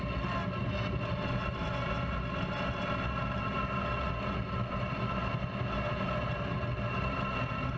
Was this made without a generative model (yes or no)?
yes